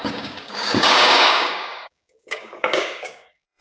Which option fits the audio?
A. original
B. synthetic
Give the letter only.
B